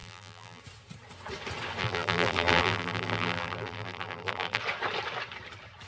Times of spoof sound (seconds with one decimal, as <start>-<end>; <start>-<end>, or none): 0.0-0.6; 1.8-4.6